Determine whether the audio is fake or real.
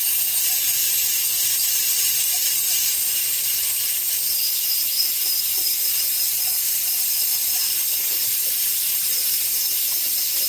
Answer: fake